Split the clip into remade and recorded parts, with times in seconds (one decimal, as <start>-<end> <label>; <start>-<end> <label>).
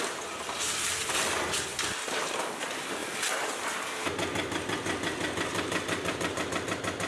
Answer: 0.0-1.7 recorded; 1.7-2.5 remade; 2.5-3.0 recorded; 3.0-3.7 remade; 3.7-5.5 recorded; 5.5-6.4 remade; 6.4-7.1 recorded